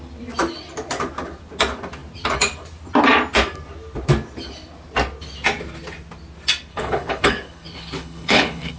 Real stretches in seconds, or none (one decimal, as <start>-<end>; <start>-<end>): 0.0-6.7